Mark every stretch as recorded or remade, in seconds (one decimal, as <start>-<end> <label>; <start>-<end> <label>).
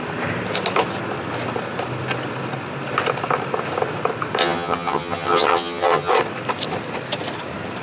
0.0-4.4 recorded; 4.4-6.1 remade; 6.1-7.8 recorded